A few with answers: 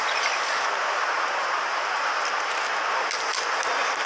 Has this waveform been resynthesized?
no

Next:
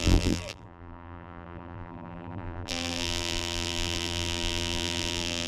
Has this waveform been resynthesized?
yes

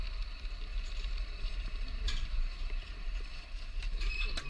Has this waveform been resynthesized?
yes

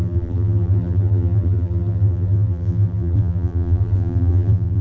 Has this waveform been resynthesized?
yes